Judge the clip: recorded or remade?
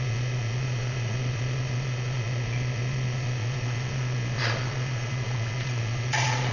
remade